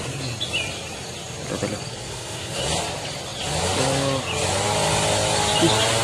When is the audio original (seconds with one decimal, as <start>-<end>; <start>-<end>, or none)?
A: 0.0-1.9; 2.6-6.0